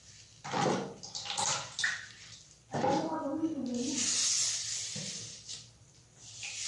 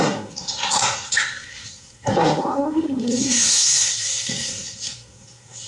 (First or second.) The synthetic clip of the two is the second